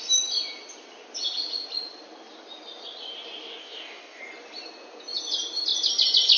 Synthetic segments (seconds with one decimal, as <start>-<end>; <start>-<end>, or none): 3.6-4.2